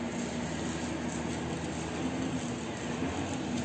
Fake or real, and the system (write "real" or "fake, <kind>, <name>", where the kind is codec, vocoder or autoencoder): real